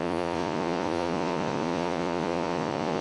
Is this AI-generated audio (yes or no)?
yes